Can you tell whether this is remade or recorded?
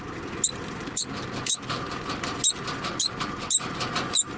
recorded